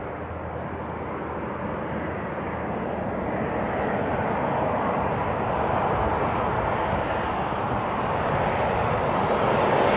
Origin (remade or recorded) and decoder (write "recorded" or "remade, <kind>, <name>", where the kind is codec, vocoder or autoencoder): recorded